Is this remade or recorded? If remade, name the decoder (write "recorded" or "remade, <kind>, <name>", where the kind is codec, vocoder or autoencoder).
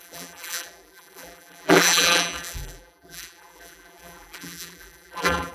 remade, vocoder, BigVGAN v2